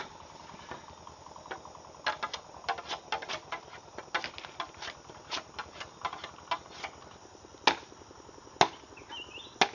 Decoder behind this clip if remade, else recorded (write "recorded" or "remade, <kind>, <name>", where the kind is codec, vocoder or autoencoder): recorded